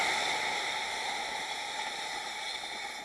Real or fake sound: real